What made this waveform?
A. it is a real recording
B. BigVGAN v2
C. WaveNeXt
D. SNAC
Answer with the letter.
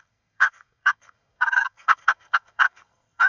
D